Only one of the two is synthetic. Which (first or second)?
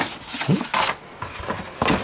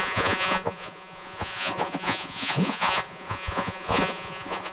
second